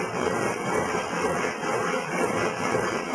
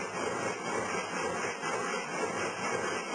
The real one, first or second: second